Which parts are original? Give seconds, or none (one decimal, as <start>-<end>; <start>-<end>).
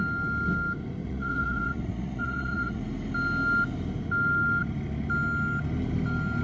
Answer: 0.0-1.0; 2.8-6.4